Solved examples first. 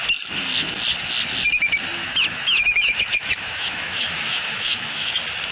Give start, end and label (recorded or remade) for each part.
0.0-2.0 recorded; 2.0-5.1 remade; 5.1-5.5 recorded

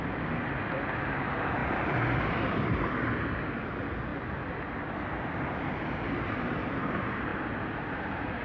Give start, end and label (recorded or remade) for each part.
0.0-7.3 recorded; 7.3-8.4 remade

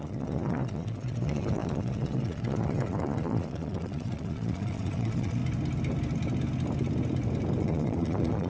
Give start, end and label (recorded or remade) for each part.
0.0-5.4 remade; 5.4-7.6 recorded; 7.6-8.5 remade

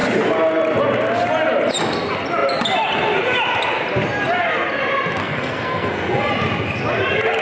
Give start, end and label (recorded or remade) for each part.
0.0-5.2 recorded; 5.2-6.3 remade; 6.3-7.4 recorded

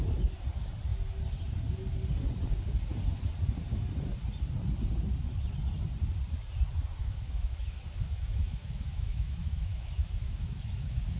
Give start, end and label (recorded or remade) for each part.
0.0-7.0 recorded; 7.0-11.2 remade

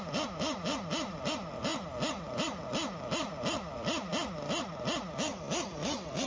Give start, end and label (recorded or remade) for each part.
0.0-6.3 recorded